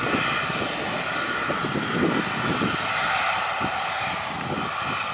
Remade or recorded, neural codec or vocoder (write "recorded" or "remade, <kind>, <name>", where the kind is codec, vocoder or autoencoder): recorded